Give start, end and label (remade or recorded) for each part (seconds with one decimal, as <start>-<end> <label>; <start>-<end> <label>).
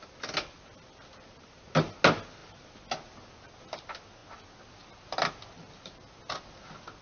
0.0-7.0 recorded